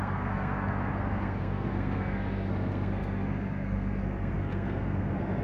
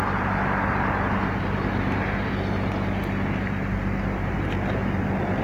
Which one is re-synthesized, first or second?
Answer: first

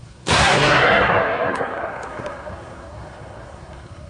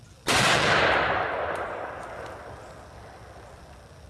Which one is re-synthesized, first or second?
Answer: first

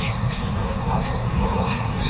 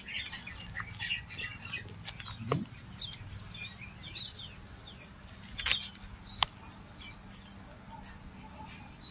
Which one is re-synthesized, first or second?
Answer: first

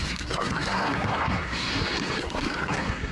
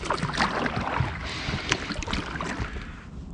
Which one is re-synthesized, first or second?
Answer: first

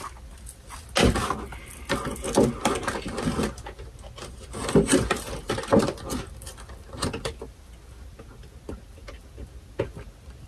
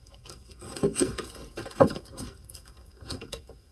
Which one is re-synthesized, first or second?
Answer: second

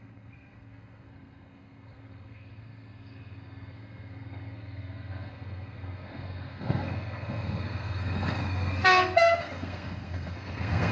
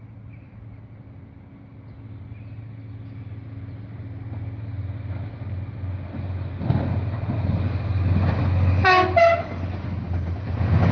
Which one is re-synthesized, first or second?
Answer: first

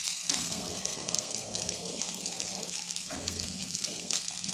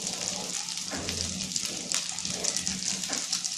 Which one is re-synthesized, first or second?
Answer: first